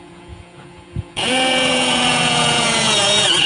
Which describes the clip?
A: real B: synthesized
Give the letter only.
B